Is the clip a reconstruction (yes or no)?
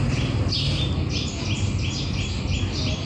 no